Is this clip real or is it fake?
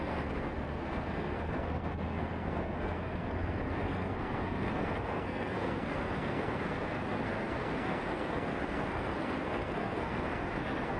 fake